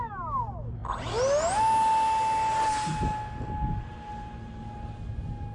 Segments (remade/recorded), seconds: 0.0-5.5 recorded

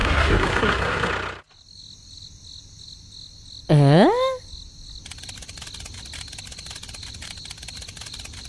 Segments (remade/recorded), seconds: 0.0-1.1 remade; 1.1-8.5 recorded

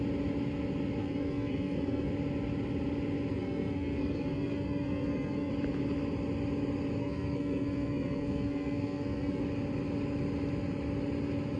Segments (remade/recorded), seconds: 0.0-1.0 recorded; 1.0-2.1 remade; 2.1-3.3 recorded; 3.3-5.5 remade; 5.5-7.0 recorded; 7.0-9.4 remade; 9.4-11.6 recorded

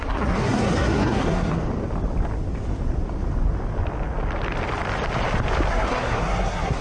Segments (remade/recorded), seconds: 0.0-1.6 remade; 1.6-5.7 recorded; 5.7-6.8 remade

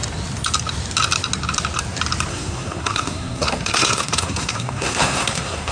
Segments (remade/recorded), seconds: 0.0-2.3 recorded; 2.3-5.7 remade

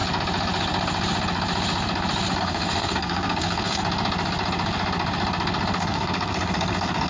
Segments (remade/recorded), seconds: 0.0-2.4 recorded; 2.4-3.8 remade; 3.8-5.8 recorded; 5.8-7.1 remade

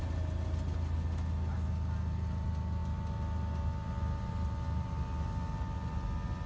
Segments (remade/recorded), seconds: 0.0-6.5 recorded

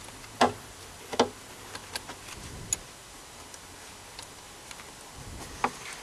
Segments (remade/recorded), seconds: 0.0-6.0 recorded